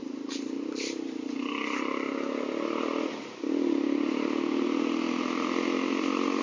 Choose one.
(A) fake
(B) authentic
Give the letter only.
B